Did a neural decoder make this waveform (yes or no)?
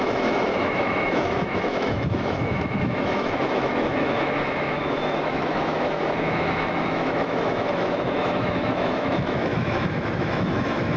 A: yes